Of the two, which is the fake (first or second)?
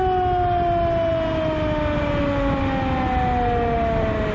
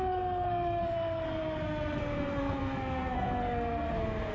second